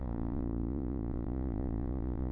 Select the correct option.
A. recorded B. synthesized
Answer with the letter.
B